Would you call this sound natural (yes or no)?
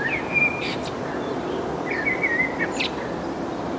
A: yes